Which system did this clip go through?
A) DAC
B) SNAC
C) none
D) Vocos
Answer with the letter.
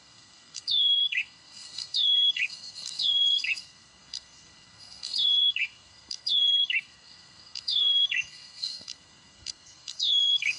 B